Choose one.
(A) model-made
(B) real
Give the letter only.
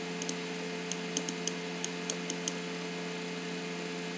B